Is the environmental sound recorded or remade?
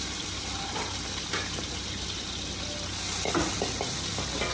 recorded